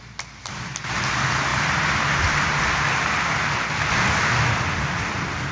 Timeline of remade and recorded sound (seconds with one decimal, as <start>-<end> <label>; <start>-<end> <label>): 0.0-5.5 recorded